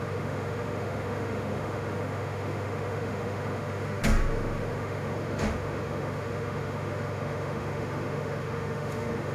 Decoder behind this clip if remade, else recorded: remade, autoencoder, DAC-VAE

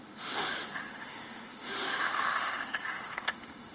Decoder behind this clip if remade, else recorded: remade, autoencoder, DAC-VAE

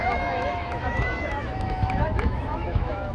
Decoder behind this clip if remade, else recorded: remade, autoencoder, DAC-VAE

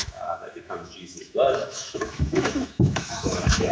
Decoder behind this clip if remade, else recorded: remade, autoencoder, DAC-VAE